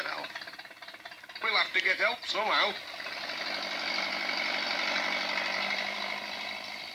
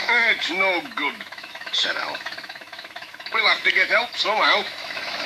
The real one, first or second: first